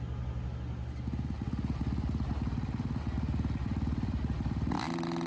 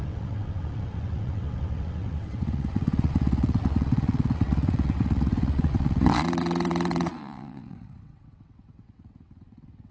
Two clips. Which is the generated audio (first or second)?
second